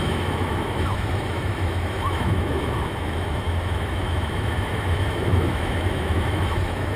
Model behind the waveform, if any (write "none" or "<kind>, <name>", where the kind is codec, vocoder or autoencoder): autoencoder, DAC-VAE